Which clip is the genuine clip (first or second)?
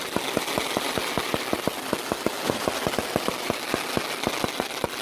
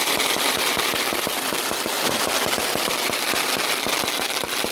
first